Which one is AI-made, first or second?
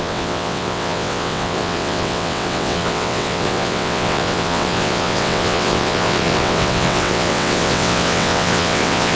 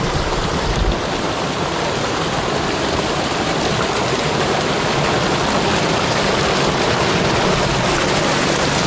first